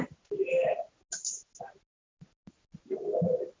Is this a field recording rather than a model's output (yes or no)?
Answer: yes